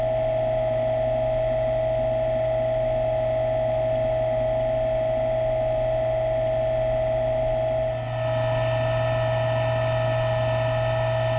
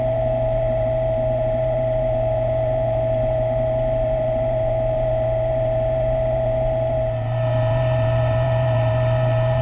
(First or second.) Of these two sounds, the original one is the first